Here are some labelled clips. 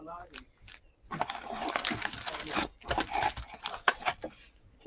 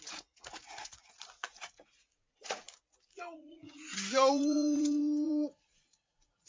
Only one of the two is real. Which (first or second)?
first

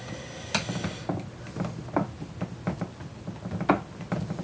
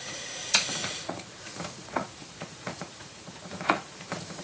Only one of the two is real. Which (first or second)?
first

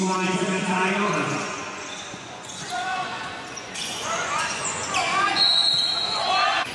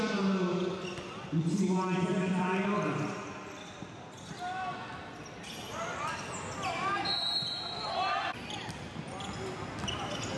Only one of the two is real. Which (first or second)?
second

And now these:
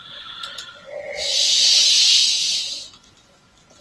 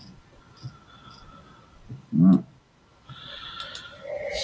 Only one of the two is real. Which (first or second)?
second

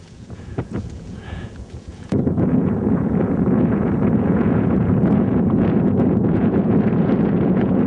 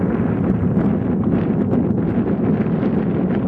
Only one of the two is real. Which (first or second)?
second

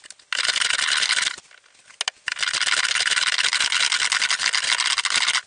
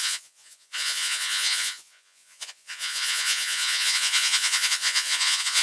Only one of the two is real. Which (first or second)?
first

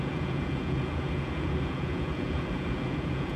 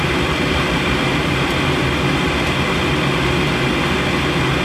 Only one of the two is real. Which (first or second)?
second